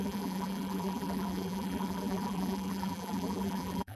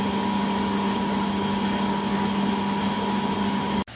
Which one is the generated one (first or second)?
first